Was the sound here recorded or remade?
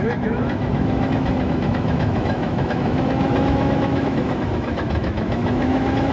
remade